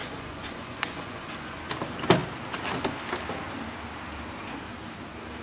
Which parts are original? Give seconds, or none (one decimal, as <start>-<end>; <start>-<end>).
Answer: 1.6-5.4